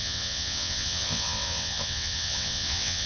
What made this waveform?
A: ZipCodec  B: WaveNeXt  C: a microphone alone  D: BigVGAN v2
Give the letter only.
B